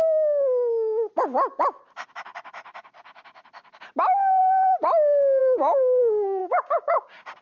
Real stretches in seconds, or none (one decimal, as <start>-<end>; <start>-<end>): 0.0-5.4; 6.0-6.4